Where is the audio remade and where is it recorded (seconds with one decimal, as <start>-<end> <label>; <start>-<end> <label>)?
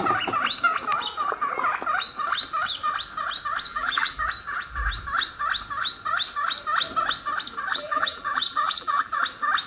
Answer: 0.0-3.7 recorded; 3.7-4.2 remade; 4.2-7.7 recorded; 7.7-9.2 remade; 9.2-9.7 recorded